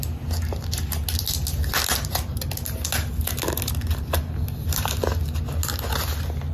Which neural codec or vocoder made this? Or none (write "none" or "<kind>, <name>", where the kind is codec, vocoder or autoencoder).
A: none